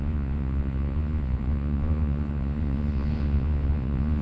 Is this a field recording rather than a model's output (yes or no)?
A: no